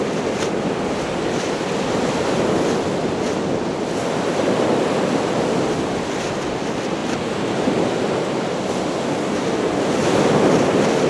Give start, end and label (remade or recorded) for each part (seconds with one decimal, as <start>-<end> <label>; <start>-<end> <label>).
0.0-11.1 recorded